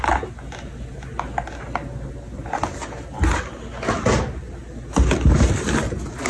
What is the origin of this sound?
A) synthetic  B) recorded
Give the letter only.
B